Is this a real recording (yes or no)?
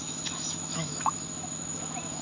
no